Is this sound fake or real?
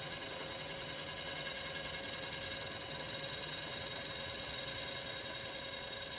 fake